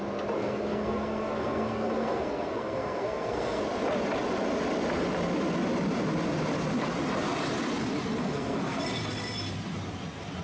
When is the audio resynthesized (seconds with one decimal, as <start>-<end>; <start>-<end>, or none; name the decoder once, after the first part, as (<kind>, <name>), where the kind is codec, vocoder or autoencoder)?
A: 0.4-3.6 (codec, SNAC); 8.2-8.8